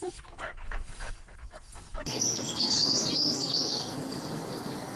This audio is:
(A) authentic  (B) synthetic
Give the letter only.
B